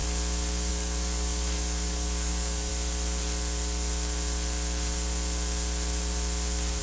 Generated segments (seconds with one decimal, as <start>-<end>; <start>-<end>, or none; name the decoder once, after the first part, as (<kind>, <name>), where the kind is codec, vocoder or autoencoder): 0.7-2.7 (codec, DAC)